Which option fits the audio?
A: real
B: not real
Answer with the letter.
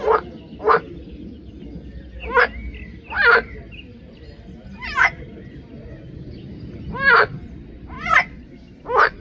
A